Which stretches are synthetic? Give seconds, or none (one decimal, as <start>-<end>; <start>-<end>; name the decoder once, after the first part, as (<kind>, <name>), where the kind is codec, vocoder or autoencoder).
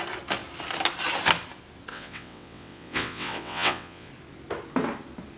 1.9-4.1 (vocoder, WaveNeXt)